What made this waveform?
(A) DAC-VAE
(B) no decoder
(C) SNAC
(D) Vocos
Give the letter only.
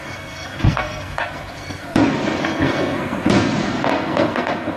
C